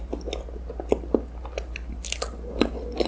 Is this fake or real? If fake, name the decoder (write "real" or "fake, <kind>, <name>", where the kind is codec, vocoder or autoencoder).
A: real